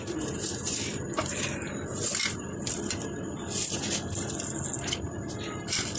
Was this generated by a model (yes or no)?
no